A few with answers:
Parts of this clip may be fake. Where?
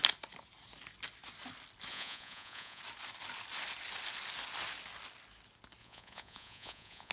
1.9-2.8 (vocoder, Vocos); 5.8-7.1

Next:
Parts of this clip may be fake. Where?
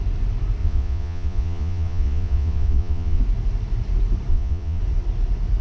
0.6-3.2 (vocoder, Vocos); 4.3-4.8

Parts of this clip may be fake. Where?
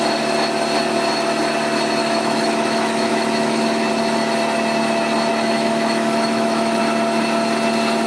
2.0-3.9 (autoencoder, DAC-VAE); 5.3-6.8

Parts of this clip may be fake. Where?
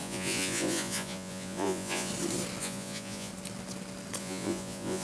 0.0-2.1 (vocoder, Vocos); 2.6-3.3; 4.2-5.0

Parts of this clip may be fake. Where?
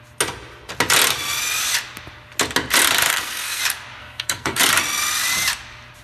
3.1-3.6 (codec, SNAC); 4.0-4.6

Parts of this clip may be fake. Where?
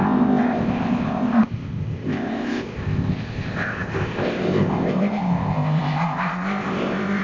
0.0-7.2 (codec, ZipCodec)